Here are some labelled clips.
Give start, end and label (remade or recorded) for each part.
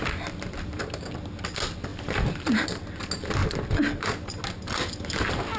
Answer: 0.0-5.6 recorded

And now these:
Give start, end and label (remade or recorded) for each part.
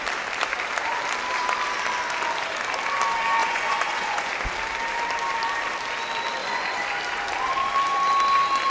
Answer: 0.0-3.4 recorded; 3.4-4.3 remade; 4.3-6.4 recorded; 6.4-7.0 remade; 7.0-8.7 recorded